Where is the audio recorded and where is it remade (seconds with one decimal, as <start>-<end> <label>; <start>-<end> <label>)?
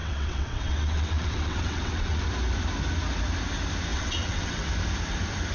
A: 0.0-2.2 remade; 2.2-3.9 recorded; 3.9-4.7 remade; 4.7-5.5 recorded